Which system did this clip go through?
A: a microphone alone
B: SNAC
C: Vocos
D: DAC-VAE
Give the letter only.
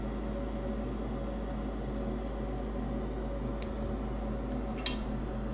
A